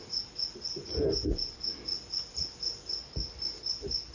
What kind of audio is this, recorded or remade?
recorded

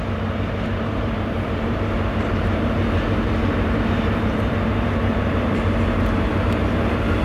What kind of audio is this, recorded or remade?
remade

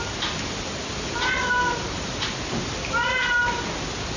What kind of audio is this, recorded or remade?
recorded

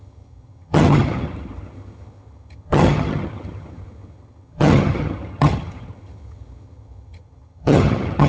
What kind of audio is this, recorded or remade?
remade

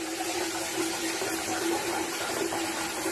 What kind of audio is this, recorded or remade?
remade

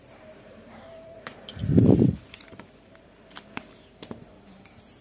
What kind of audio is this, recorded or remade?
remade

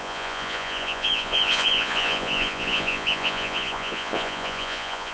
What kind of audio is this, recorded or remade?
remade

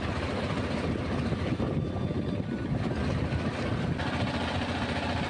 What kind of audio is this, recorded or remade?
recorded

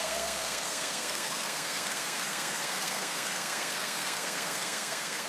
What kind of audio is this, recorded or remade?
remade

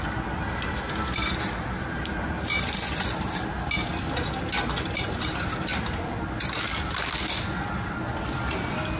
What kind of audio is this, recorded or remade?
recorded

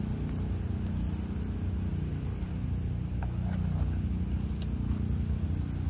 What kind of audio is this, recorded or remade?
recorded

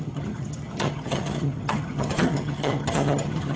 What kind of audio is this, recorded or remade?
remade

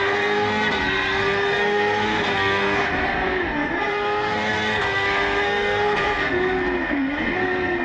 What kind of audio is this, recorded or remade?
remade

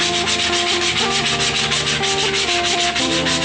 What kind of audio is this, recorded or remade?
recorded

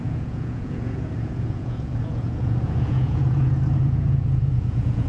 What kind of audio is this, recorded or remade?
remade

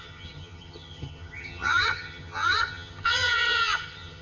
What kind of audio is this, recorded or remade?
remade